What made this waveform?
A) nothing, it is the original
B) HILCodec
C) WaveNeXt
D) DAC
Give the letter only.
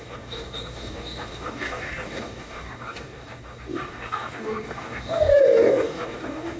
D